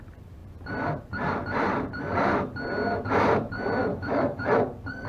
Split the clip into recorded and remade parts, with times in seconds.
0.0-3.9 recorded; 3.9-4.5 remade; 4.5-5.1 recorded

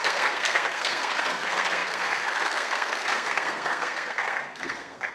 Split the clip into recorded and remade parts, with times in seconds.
0.0-5.1 remade

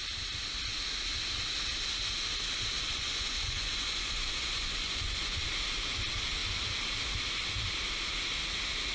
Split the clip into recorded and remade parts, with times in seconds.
0.0-2.9 recorded; 2.9-5.4 remade; 5.4-8.9 recorded

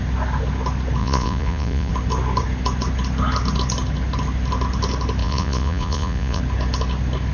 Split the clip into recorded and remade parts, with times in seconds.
0.0-1.0 recorded; 1.0-1.9 remade; 1.9-5.2 recorded; 5.2-6.4 remade; 6.4-7.3 recorded